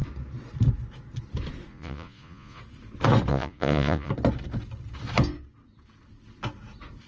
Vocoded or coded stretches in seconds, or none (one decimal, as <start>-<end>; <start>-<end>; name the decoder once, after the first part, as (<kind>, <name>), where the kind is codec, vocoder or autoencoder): 1.7-2.6 (vocoder, Vocos); 3.3-4.1